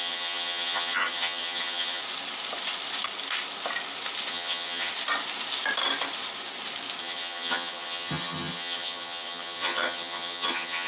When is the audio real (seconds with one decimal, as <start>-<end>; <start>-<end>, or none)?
2.0-4.3; 4.9-7.0